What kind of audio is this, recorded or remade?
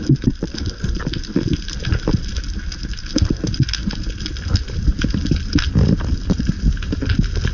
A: recorded